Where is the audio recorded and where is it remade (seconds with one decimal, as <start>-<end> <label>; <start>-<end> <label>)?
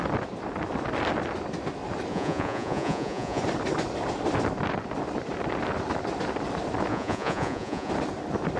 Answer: 0.0-2.1 recorded; 2.1-3.4 remade; 3.4-6.9 recorded; 6.9-7.9 remade; 7.9-8.6 recorded